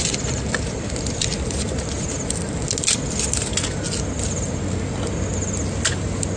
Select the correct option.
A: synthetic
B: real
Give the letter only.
B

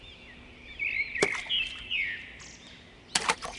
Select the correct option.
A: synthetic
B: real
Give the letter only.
B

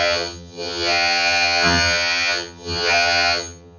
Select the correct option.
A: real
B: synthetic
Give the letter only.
B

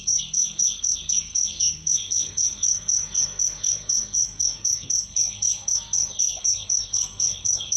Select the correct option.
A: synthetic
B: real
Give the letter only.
A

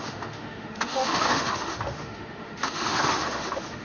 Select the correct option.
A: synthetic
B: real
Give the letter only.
A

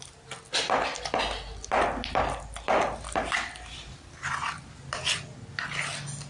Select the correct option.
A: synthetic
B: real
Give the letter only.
B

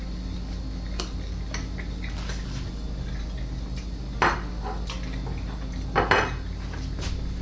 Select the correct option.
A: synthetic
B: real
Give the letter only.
B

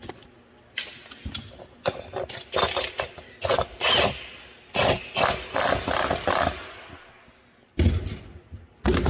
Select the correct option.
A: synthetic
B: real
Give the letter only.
B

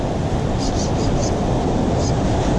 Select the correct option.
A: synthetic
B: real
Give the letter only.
B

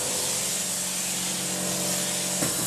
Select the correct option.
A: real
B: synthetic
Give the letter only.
A